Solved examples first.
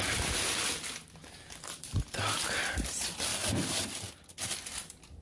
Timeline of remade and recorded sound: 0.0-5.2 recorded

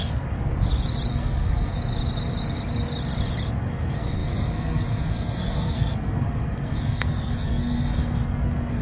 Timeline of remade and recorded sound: 0.0-0.5 remade; 0.5-1.1 recorded; 1.1-1.7 remade; 1.7-3.6 recorded; 3.6-8.8 remade

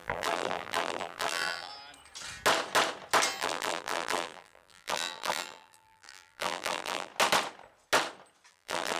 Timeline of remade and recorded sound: 0.0-1.7 remade; 1.7-3.4 recorded; 3.4-7.1 remade; 7.1-8.5 recorded; 8.5-9.0 remade